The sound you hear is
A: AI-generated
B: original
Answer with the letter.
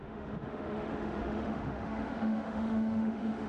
A